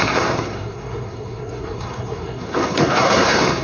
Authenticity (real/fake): fake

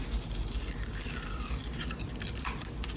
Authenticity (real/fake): real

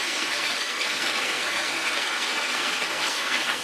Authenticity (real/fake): fake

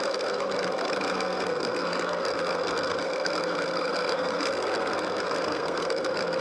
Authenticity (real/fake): fake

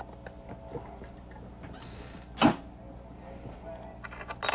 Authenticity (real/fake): real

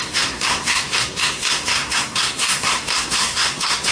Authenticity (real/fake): fake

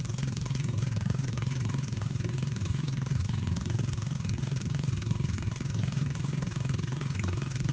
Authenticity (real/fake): fake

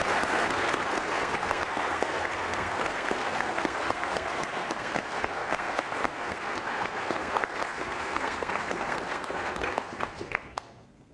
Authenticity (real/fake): fake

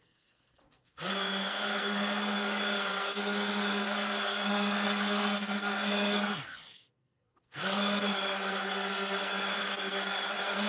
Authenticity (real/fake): fake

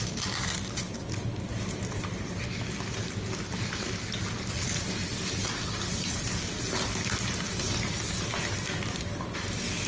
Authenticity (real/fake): real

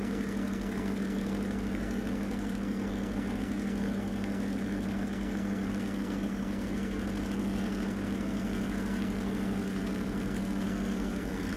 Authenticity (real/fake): fake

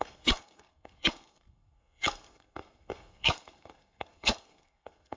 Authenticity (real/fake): fake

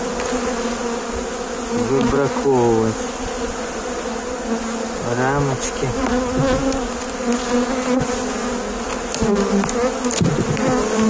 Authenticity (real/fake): real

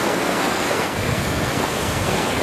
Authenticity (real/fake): fake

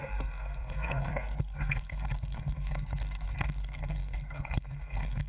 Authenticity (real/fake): fake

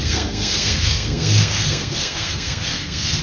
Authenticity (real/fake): fake